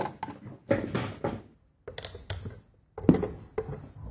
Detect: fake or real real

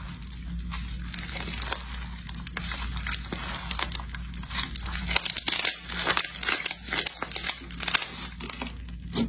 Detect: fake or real real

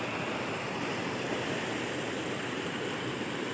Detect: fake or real real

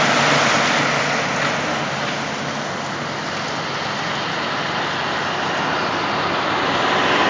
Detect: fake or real real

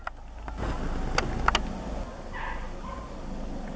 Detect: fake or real real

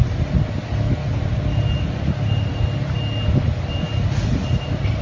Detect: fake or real real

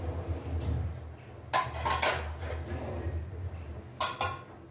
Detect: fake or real real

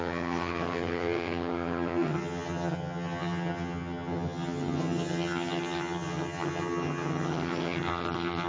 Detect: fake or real fake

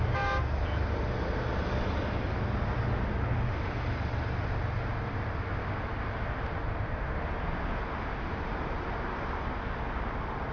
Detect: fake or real real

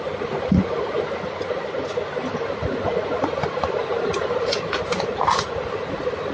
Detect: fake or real real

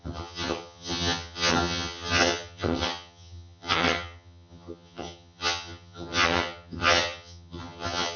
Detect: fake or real fake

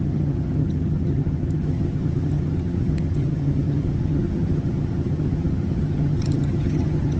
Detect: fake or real fake